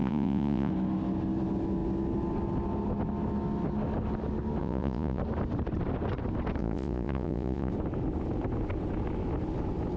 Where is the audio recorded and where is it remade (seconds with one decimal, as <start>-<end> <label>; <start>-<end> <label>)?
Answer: 0.0-0.7 remade; 0.7-4.6 recorded; 4.6-5.2 remade; 5.2-6.6 recorded; 6.6-7.7 remade; 7.7-10.0 recorded